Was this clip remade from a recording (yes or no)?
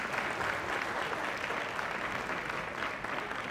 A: no